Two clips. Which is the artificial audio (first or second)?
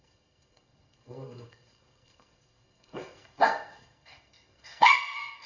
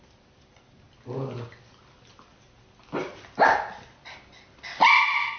first